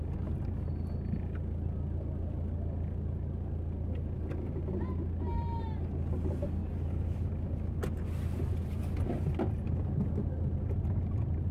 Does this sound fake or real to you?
real